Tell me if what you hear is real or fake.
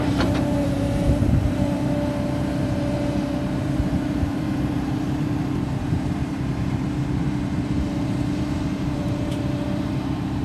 fake